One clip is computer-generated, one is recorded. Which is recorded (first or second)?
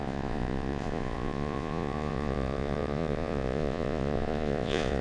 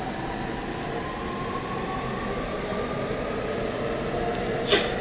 second